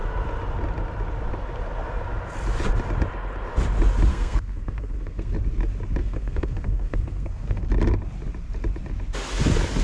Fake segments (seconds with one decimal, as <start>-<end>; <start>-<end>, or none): 4.1-5.3; 6.0-7.6